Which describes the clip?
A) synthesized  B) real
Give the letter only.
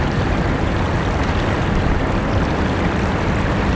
B